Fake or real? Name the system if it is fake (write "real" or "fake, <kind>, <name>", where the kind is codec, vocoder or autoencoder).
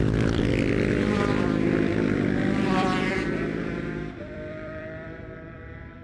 fake, vocoder, BigVGAN v2